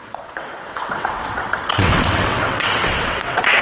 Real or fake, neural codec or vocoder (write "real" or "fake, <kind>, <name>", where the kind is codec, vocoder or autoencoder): fake, vocoder, WaveNeXt